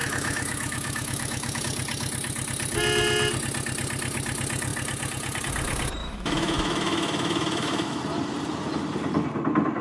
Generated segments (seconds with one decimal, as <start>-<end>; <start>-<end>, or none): 0.0-1.6; 6.0-8.0